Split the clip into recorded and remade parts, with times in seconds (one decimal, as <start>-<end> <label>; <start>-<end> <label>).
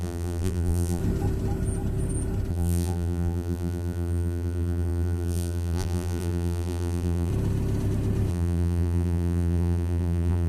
0.0-1.0 remade; 1.0-2.5 recorded; 2.5-7.3 remade; 7.3-8.3 recorded; 8.3-10.5 remade